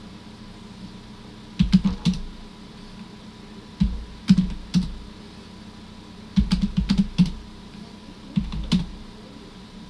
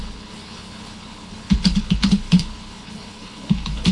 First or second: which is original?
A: first